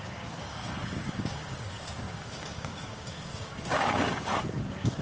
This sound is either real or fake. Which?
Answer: fake